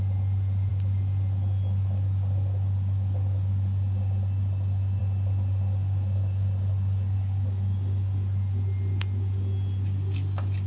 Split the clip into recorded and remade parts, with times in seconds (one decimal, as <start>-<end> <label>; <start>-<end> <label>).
0.0-10.7 recorded

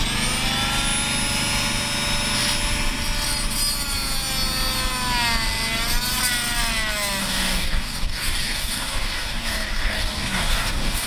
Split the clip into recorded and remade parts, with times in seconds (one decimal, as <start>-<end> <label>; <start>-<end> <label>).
0.0-7.2 recorded; 7.2-11.1 remade

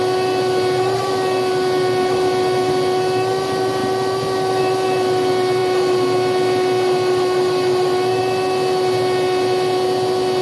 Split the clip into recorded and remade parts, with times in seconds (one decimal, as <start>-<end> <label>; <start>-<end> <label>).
0.0-10.4 recorded